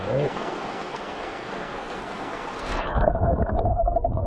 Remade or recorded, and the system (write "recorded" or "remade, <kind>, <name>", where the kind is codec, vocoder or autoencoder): remade, codec, SNAC